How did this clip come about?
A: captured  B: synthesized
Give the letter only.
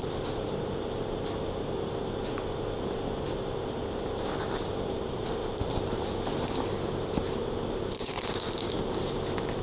A